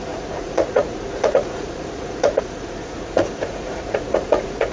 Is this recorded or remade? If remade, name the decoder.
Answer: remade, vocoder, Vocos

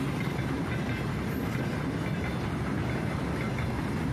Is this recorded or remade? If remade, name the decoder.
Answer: recorded